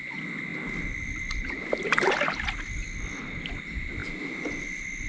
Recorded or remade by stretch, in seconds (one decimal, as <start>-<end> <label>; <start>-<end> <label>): 0.0-5.1 recorded

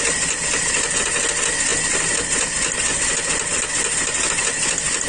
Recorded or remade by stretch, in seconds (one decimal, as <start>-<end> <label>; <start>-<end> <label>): 0.0-5.1 recorded